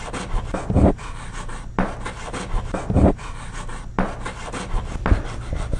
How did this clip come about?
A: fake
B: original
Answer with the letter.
B